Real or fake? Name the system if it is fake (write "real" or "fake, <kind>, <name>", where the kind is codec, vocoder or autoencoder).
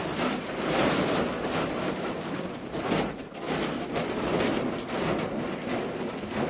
real